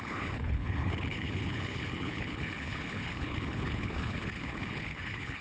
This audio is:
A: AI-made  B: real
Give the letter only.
A